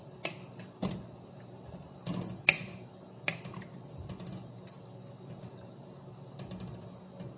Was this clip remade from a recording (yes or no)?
no